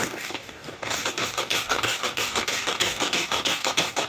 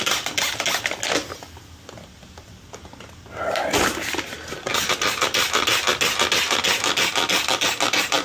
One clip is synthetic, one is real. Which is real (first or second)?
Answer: second